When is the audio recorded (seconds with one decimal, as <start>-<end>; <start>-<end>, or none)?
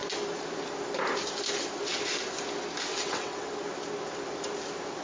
0.0-2.9; 3.5-5.0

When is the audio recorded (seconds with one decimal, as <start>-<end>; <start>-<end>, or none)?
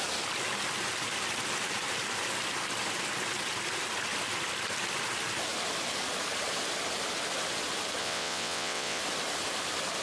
0.0-8.0; 9.0-10.0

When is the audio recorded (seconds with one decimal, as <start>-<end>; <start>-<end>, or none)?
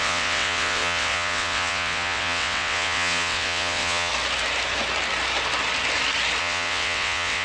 4.1-6.4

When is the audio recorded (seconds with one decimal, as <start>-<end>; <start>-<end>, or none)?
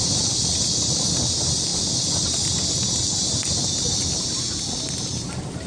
0.0-5.7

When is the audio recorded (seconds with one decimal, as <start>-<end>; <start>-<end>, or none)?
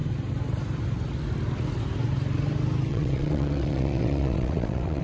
0.0-2.9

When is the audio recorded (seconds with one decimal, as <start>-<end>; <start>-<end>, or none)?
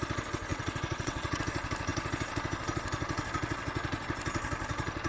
0.0-0.5; 1.4-5.1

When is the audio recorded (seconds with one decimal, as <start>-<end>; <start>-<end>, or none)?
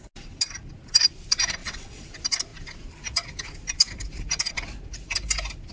0.0-1.6; 2.1-5.7